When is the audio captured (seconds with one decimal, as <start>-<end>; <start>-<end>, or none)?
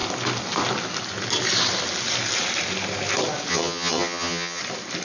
0.0-3.5; 4.6-5.0